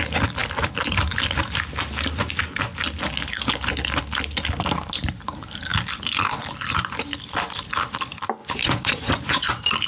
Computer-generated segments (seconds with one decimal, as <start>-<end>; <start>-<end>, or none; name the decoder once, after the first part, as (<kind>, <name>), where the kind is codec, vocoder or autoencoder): 8.4-9.5 (vocoder, Vocos)